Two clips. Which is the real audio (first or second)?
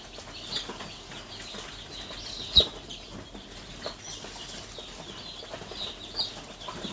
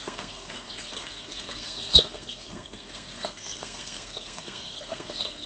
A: first